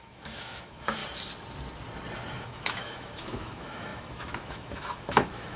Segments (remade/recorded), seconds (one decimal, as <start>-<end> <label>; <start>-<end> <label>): 0.0-1.0 remade; 1.0-2.3 recorded; 2.3-5.6 remade